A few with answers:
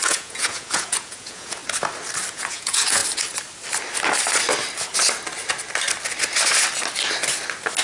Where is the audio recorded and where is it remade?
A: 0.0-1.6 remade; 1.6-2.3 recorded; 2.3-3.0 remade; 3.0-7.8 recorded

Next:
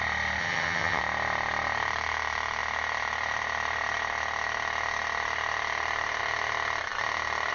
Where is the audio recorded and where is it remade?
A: 0.0-0.4 recorded; 0.4-1.0 remade; 1.0-7.5 recorded

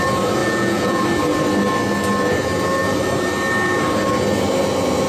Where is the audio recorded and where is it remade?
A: 0.0-0.4 recorded; 0.4-1.0 remade; 1.0-5.1 recorded

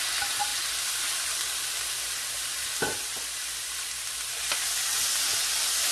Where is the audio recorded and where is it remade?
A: 0.0-5.9 recorded

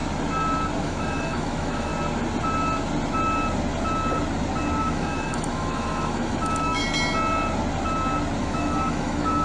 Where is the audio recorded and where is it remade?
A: 0.0-0.8 recorded; 0.8-1.9 remade; 1.9-4.8 recorded; 4.8-6.8 remade; 6.8-8.4 recorded; 8.4-9.4 remade

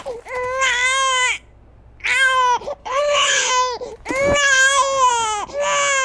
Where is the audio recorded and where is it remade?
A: 0.0-2.8 recorded; 2.8-3.5 remade; 3.5-6.0 recorded